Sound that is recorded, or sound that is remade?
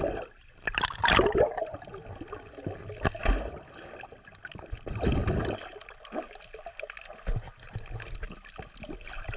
recorded